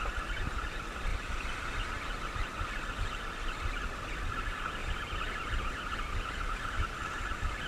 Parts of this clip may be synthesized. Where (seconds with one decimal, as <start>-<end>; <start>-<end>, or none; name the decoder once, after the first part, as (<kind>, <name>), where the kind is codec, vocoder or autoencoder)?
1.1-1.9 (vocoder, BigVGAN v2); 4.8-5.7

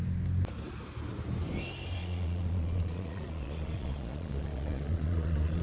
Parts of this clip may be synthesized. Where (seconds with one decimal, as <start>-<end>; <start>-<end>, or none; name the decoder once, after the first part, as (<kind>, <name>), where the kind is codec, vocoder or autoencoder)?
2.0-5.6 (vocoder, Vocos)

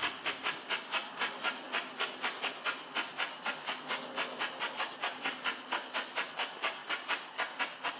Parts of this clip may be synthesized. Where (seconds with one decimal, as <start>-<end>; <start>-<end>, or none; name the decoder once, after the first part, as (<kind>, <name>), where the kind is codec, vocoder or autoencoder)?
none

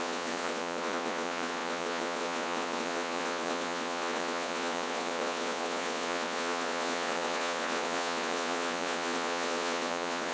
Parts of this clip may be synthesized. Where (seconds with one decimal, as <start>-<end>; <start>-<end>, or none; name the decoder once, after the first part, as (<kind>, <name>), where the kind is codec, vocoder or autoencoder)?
0.0-10.3 (vocoder, Vocos)

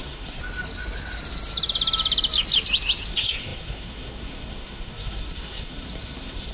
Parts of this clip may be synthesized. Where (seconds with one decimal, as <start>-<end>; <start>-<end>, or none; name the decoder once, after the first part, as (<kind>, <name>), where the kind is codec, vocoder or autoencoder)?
0.0-0.4 (codec, SNAC); 3.1-6.5

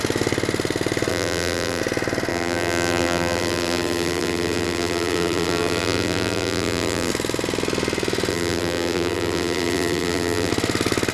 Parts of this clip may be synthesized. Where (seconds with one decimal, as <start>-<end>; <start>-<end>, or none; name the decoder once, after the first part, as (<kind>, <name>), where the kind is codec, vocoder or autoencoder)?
1.1-1.8 (vocoder, BigVGAN v2); 2.3-7.1; 8.3-10.5

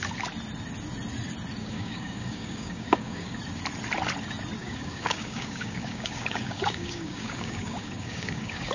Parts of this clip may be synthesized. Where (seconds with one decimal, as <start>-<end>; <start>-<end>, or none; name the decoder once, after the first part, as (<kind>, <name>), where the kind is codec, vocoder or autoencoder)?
1.6-3.4 (codec, DAC); 4.6-8.7